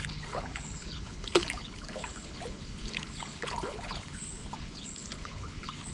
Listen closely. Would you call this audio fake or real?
fake